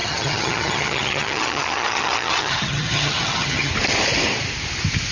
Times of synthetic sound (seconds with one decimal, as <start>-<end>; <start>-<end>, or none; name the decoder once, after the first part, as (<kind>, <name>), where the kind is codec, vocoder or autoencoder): 0.0-3.7 (vocoder, HiFi-GAN)